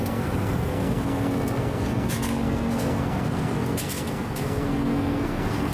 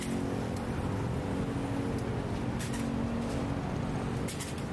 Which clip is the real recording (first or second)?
second